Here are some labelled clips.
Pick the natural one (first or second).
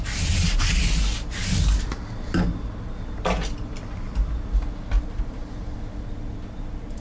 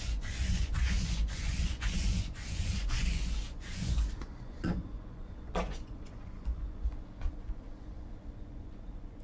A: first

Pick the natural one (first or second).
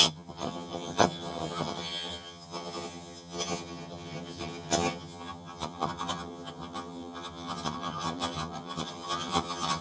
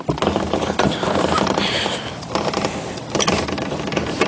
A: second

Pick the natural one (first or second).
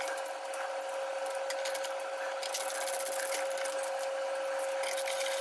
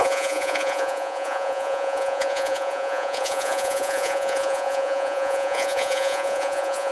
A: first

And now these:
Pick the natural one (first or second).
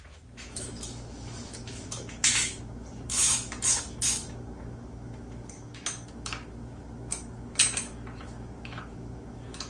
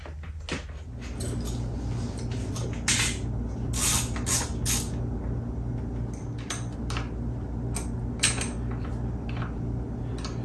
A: second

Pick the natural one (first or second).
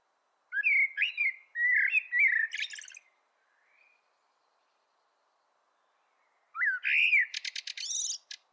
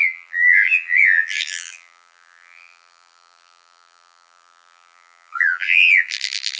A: first